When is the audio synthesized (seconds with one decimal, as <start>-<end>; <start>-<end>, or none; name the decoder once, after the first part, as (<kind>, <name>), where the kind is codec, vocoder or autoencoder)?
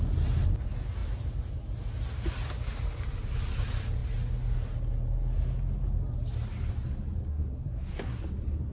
7.3-8.2 (codec, SNAC)